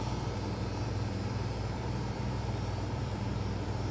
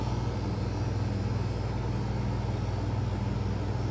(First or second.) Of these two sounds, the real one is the second